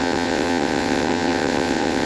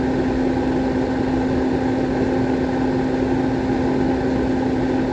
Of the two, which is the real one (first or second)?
second